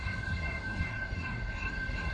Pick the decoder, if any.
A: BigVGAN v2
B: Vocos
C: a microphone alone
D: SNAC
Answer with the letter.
D